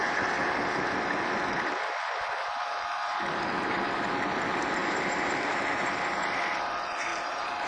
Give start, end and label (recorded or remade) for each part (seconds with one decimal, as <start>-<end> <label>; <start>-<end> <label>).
0.0-4.8 recorded; 4.8-5.9 remade; 5.9-7.1 recorded; 7.1-7.7 remade